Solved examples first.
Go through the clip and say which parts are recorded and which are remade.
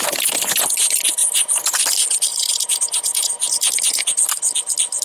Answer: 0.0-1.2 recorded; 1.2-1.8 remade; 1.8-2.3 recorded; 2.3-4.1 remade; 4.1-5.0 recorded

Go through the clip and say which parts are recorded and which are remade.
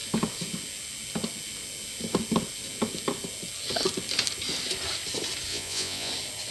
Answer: 0.0-5.5 recorded; 5.5-6.1 remade; 6.1-6.5 recorded